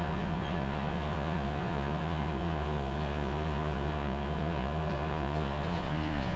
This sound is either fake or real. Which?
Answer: fake